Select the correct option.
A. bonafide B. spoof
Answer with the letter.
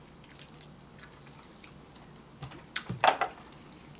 A